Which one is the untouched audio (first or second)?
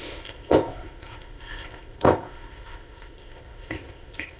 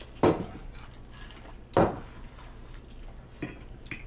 second